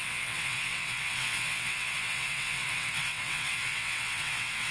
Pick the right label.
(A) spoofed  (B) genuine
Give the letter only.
A